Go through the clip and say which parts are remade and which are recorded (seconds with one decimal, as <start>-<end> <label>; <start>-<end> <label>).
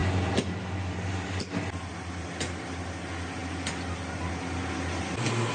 0.0-5.5 recorded